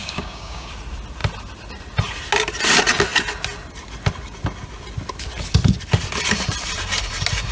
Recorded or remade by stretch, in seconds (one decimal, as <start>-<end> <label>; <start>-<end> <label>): 0.0-0.7 remade; 0.7-7.5 recorded